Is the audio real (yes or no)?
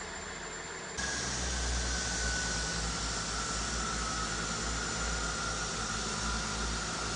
yes